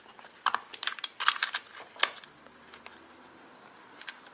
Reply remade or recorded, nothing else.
recorded